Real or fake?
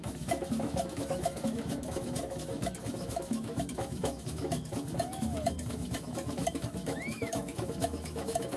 fake